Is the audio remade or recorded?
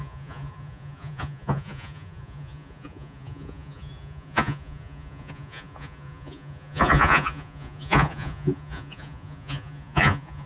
remade